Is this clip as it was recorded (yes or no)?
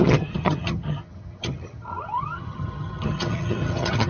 no